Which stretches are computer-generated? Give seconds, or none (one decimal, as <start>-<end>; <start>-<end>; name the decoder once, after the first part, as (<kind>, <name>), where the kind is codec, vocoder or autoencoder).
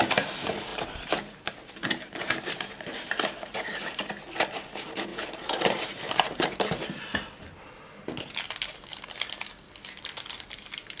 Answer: 0.7-4.1 (vocoder, BigVGAN v2); 5.1-7.7